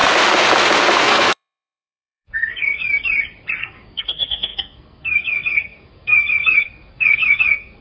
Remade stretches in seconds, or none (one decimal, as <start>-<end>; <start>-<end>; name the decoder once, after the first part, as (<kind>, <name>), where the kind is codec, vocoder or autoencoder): 1.0-2.8 (codec, SNAC); 3.6-7.8